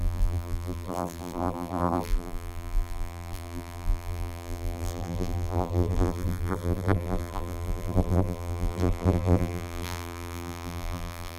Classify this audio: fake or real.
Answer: fake